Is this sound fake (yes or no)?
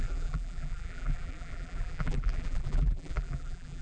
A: yes